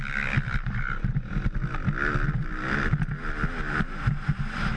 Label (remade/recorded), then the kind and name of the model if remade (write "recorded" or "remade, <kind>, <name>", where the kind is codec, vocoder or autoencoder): recorded